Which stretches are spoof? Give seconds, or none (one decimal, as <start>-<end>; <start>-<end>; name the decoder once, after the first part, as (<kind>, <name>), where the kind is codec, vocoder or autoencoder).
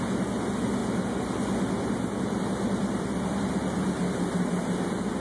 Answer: none